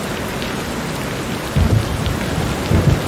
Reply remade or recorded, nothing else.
recorded